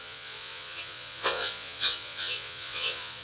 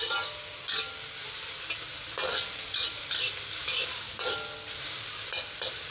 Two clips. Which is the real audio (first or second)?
second